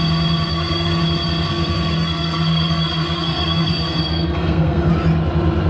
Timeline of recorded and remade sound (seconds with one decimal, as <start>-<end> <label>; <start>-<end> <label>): 0.0-0.5 recorded; 0.5-1.0 remade; 1.0-1.5 recorded; 1.5-4.9 remade; 4.9-5.7 recorded